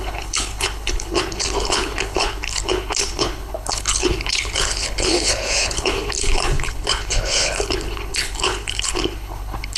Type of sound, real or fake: fake